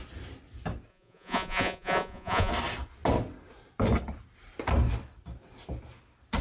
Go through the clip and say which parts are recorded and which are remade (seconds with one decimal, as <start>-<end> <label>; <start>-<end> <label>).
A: 0.0-0.9 recorded; 0.9-2.5 remade; 2.5-6.4 recorded